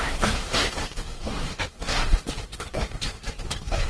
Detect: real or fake fake